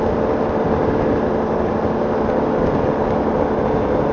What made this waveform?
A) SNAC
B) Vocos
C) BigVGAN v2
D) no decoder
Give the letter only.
D